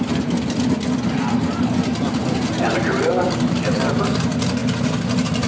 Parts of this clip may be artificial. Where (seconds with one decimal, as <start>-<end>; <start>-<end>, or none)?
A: 2.2-3.9